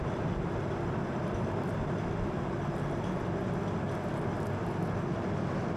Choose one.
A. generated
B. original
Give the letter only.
B